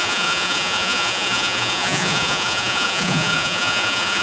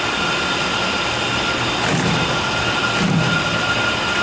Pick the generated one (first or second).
first